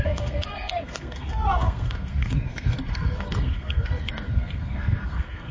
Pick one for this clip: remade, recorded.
remade